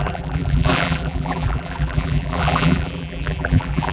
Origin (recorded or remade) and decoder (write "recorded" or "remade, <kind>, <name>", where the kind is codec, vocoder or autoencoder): remade, vocoder, BigVGAN v2